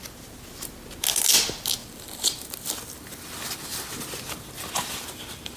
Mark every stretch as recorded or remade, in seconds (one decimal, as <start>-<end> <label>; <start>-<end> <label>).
0.0-1.8 recorded; 1.8-5.6 remade